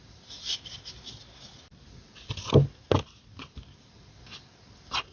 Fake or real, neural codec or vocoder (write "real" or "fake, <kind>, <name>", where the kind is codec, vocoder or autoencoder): real